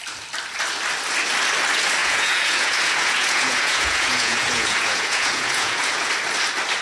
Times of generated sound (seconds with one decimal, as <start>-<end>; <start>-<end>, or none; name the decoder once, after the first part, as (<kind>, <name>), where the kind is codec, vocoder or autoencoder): 2.0-6.1 (vocoder, Vocos)